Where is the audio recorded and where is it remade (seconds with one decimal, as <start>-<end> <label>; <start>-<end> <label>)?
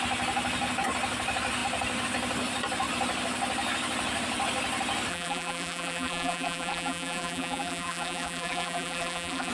0.0-5.1 recorded; 5.1-9.5 remade